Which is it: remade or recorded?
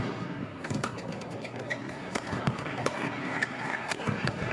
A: remade